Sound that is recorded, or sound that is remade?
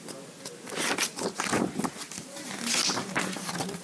recorded